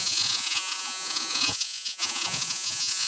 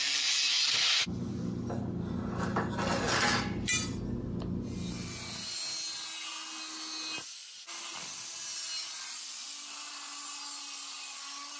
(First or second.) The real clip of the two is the second